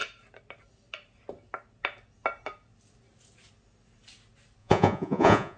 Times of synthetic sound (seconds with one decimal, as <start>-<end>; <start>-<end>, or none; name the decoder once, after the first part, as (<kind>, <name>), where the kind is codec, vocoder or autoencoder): 4.6-5.6 (vocoder, Vocos)